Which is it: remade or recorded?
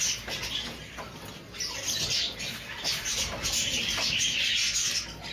recorded